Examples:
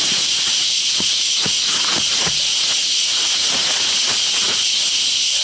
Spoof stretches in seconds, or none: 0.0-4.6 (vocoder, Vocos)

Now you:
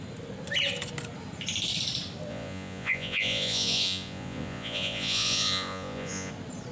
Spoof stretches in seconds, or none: 2.3-6.3 (vocoder, Vocos)